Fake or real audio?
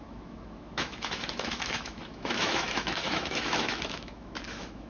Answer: fake